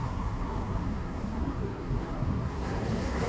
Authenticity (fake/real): fake